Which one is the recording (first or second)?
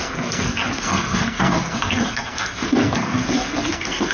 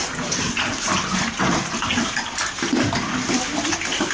second